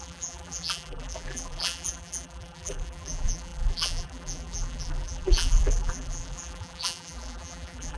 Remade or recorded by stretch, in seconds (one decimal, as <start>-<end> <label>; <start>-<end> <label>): 0.0-8.0 remade